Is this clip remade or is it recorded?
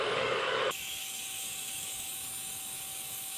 remade